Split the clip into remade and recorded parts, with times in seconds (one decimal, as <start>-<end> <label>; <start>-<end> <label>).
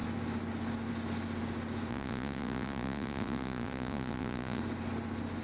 0.0-1.9 recorded; 1.9-4.6 remade; 4.6-5.4 recorded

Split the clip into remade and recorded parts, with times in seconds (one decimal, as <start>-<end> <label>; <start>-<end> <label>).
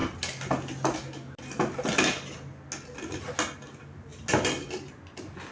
0.0-5.5 recorded